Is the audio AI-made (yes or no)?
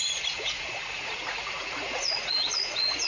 yes